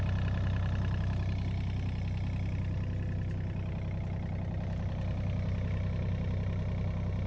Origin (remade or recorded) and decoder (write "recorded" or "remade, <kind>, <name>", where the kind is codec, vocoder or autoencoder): recorded